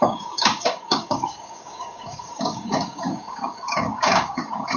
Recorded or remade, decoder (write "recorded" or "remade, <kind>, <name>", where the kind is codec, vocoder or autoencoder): remade, codec, DAC